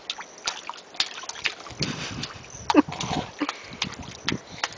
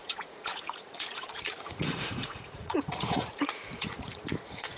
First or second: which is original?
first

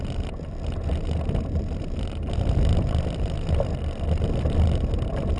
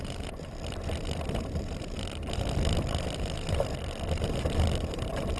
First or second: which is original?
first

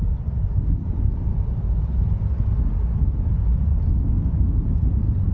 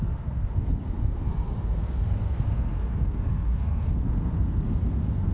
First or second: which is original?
first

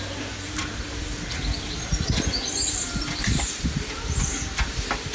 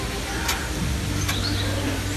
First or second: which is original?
second